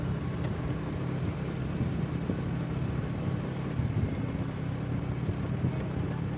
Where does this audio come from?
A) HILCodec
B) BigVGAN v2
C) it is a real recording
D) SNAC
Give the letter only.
C